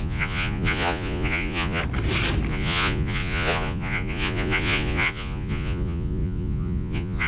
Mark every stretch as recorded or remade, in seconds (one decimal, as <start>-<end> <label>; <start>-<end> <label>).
0.0-1.8 remade; 1.8-2.5 recorded; 2.5-7.3 remade